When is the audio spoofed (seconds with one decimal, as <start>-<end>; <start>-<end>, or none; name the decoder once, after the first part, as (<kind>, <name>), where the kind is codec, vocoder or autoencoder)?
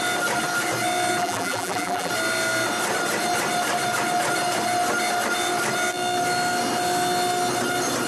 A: 1.2-2.1 (vocoder, BigVGAN v2)